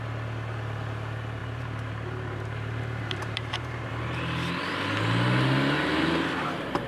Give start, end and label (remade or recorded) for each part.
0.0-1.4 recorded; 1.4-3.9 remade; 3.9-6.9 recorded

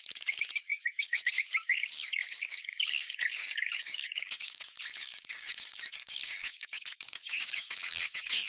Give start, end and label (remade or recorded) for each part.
0.0-8.5 remade

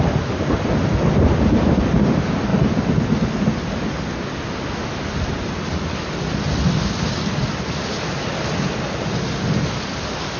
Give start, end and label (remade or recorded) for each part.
0.0-10.4 recorded